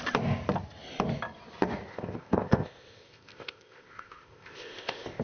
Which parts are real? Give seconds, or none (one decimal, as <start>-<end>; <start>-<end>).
0.0-1.9